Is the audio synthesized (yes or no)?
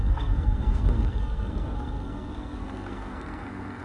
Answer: yes